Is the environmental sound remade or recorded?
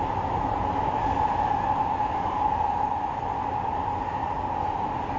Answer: recorded